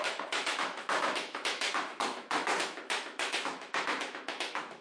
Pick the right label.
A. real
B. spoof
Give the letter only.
B